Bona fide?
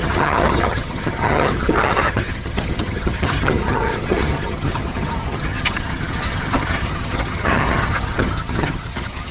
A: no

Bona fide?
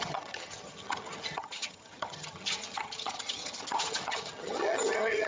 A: no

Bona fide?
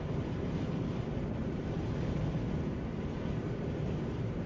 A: yes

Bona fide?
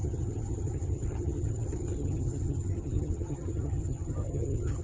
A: no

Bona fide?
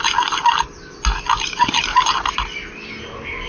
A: yes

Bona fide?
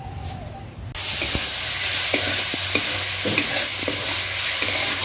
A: yes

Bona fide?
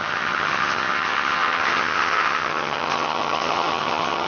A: no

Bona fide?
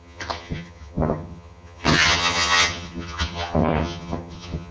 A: no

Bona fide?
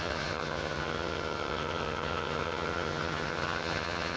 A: no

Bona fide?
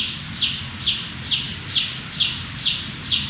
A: yes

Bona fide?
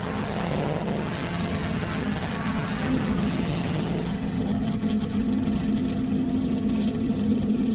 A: no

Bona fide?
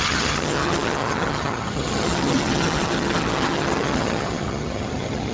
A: no